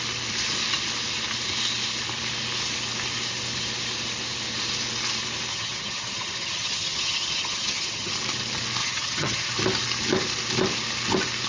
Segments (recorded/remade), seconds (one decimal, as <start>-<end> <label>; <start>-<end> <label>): 0.0-5.5 recorded; 5.5-8.1 remade; 8.1-8.8 recorded; 8.8-9.5 remade; 9.5-11.5 recorded